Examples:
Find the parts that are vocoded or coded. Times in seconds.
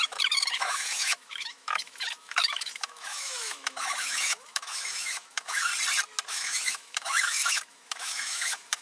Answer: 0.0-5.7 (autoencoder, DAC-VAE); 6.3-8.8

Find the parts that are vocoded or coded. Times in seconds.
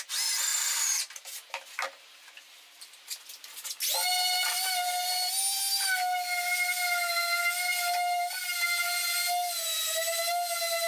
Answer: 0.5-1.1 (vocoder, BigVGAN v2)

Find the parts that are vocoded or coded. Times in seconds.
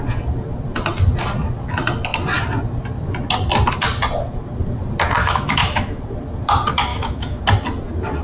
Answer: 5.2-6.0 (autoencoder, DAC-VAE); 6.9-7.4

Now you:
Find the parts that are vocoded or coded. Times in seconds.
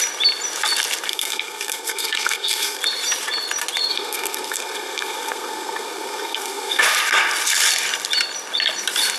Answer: 1.1-2.8 (codec, SNAC); 3.9-6.8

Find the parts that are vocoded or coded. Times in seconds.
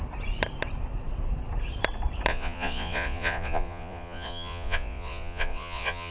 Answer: 2.3-6.1 (vocoder, Vocos)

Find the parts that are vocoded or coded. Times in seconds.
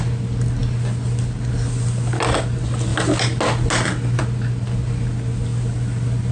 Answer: none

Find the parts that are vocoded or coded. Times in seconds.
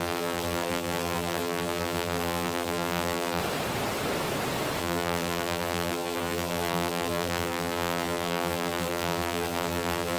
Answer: 0.0-3.4 (vocoder, BigVGAN v2); 4.8-10.2